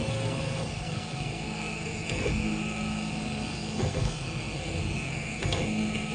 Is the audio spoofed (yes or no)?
yes